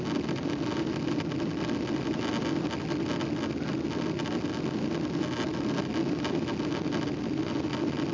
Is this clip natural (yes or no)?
yes